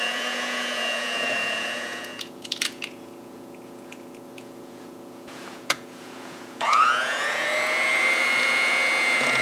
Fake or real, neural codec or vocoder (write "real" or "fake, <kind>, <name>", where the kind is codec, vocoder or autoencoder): fake, vocoder, Vocos